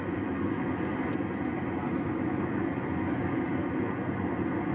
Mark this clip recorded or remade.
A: recorded